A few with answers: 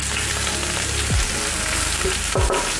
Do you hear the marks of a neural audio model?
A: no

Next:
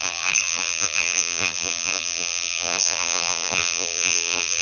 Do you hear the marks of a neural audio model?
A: yes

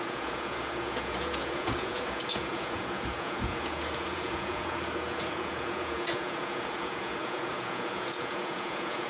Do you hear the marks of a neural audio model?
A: yes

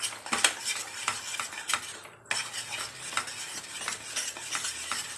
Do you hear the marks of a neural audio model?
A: no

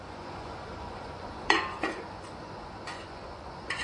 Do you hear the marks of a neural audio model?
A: yes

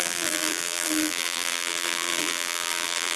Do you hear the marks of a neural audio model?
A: yes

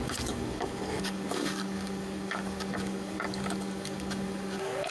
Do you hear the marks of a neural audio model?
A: yes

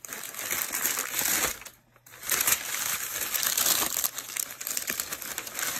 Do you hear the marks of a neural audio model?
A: no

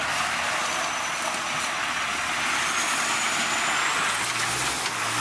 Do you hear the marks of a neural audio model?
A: no